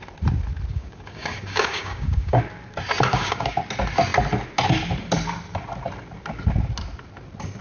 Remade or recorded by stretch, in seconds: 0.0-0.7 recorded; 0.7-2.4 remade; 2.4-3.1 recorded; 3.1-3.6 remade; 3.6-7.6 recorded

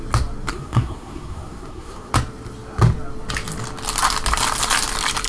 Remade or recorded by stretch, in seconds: 0.0-0.5 recorded; 0.5-2.1 remade; 2.1-5.3 recorded

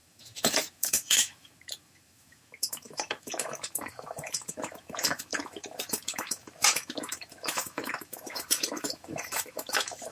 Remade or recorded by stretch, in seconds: 0.0-10.1 remade

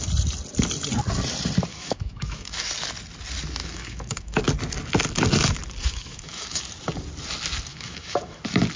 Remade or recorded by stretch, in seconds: 0.0-1.7 recorded; 1.7-2.7 remade; 2.7-3.6 recorded; 3.6-4.4 remade; 4.4-5.8 recorded; 5.8-6.6 remade; 6.6-7.7 recorded; 7.7-8.4 remade; 8.4-8.8 recorded

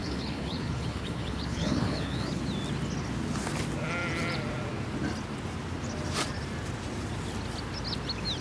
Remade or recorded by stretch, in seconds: 0.0-2.4 remade; 2.4-8.4 recorded

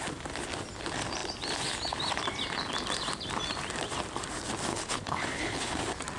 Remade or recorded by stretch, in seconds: 0.0-4.7 recorded; 4.7-5.8 remade; 5.8-6.2 recorded

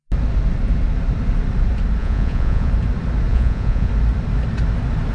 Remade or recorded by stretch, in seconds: 0.0-2.0 recorded; 2.0-2.7 remade; 2.7-3.3 recorded; 3.3-3.9 remade; 3.9-5.1 recorded

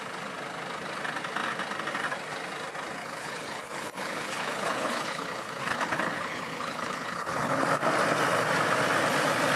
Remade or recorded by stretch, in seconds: 0.0-3.0 recorded; 3.0-7.6 remade; 7.6-9.6 recorded